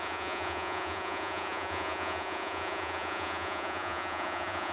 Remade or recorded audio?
remade